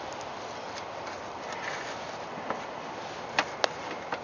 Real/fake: real